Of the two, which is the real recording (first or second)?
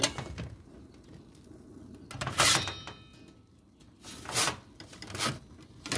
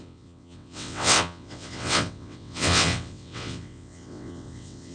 first